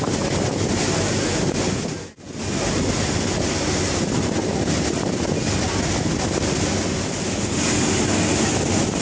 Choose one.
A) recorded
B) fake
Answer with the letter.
A